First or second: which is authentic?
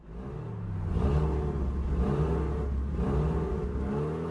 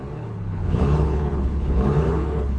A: first